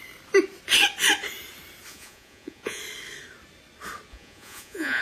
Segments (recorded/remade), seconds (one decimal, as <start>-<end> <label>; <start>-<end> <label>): 0.0-1.9 recorded; 1.9-2.8 remade; 2.8-4.1 recorded; 4.1-5.0 remade